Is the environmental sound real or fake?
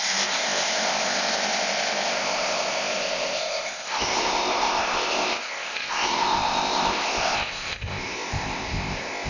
fake